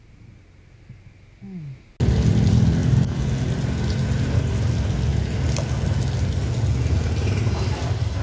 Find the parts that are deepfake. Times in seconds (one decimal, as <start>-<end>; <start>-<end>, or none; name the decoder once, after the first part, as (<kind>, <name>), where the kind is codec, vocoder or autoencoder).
none

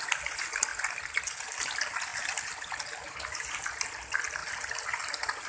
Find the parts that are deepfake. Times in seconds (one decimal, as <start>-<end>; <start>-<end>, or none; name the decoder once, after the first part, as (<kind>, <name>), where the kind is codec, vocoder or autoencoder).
none

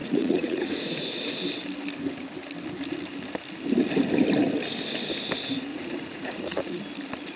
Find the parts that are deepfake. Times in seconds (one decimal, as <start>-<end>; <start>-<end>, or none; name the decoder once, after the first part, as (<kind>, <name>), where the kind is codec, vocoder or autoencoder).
0.0-1.4 (vocoder, Vocos); 5.7-6.8

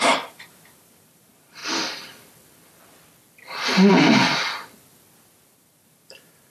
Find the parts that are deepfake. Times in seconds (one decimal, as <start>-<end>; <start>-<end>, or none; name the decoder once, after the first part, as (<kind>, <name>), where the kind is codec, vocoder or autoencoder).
0.0-1.6 (vocoder, BigVGAN v2); 3.9-4.3; 5.5-6.5

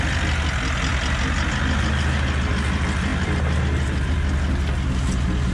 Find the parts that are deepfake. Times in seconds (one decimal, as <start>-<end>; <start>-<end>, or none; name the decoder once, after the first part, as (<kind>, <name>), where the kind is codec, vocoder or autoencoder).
3.1-4.0 (vocoder, BigVGAN v2)